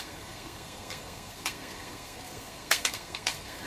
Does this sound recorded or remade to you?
remade